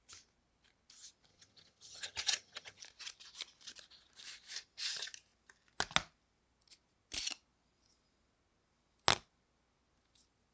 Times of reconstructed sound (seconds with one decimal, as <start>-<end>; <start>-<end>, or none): 1.3-2.8